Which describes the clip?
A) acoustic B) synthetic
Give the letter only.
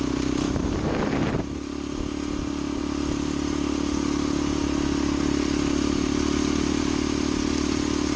A